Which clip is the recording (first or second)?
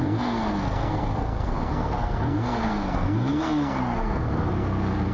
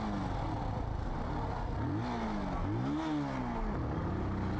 second